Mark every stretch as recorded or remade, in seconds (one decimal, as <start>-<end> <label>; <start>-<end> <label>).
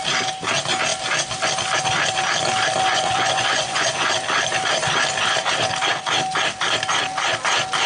0.0-2.9 recorded; 2.9-4.1 remade; 4.1-7.9 recorded